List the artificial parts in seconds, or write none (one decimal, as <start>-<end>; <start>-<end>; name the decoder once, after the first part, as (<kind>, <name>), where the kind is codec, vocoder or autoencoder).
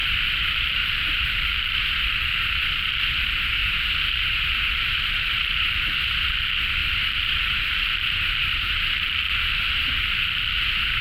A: 0.0-1.9 (vocoder, BigVGAN v2); 3.6-6.0; 6.8-9.5